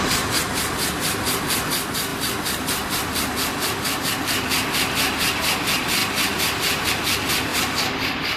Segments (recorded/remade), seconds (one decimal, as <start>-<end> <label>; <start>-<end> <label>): 0.0-2.1 recorded; 2.1-4.0 remade; 4.0-7.5 recorded; 7.5-8.4 remade

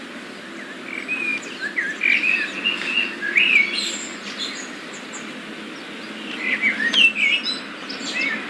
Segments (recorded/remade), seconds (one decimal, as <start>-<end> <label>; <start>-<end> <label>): 0.0-8.5 recorded

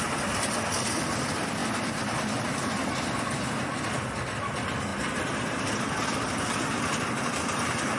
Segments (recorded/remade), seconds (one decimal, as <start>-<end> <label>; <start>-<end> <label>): 0.0-1.6 recorded; 1.6-3.8 remade; 3.8-8.0 recorded

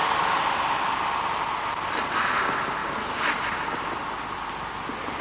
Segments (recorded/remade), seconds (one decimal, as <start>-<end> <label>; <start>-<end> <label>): 0.0-2.4 remade; 2.4-2.8 recorded; 2.8-3.5 remade; 3.5-5.2 recorded

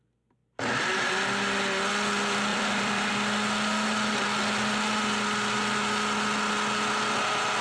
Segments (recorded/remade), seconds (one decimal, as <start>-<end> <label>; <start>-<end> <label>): 0.0-2.5 recorded; 2.5-3.1 remade; 3.1-7.6 recorded

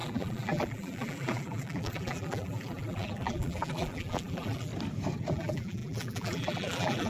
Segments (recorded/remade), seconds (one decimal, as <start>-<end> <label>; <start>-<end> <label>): 0.0-4.7 remade; 4.7-5.3 recorded; 5.3-7.1 remade

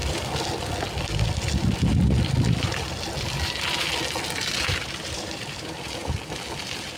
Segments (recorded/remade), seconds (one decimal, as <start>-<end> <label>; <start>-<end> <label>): 0.0-2.6 recorded; 2.6-3.9 remade; 3.9-4.7 recorded; 4.7-6.0 remade; 6.0-7.0 recorded